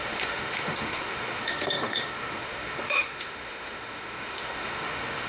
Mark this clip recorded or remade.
remade